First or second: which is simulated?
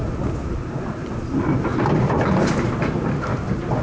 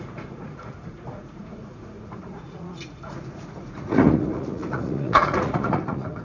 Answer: second